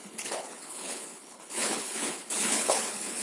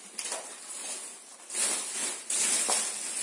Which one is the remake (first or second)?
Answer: first